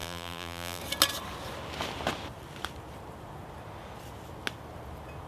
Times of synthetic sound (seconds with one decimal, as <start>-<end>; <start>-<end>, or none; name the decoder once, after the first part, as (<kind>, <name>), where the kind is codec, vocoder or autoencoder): 0.0-0.8 (vocoder, BigVGAN v2)